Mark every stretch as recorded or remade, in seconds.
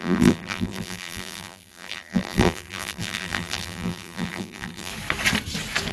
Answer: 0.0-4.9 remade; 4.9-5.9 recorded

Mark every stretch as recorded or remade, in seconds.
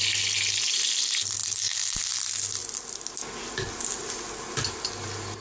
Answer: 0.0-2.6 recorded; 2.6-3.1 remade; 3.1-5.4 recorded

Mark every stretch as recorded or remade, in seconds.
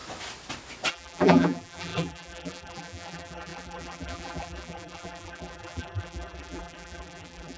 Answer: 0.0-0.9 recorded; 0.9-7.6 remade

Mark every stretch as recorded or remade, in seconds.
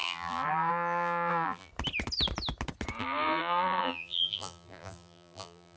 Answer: 0.0-1.7 remade; 1.7-3.0 recorded; 3.0-5.8 remade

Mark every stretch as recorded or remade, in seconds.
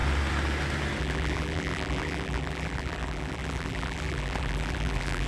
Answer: 0.0-1.0 recorded; 1.0-5.3 remade